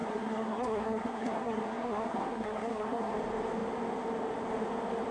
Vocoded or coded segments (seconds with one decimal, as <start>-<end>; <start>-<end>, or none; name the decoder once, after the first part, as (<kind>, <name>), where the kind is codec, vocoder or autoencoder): 0.0-3.1 (codec, SNAC)

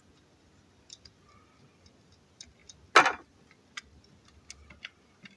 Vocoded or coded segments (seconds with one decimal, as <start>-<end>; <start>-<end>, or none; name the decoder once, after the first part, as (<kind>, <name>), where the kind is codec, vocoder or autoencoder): none

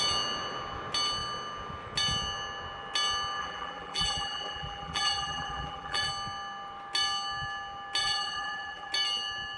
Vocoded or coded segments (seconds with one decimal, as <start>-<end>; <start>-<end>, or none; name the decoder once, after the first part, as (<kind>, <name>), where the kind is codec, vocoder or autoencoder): 3.4-6.1 (vocoder, BigVGAN v2); 8.0-8.9